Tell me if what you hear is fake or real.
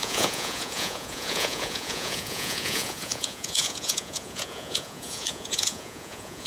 fake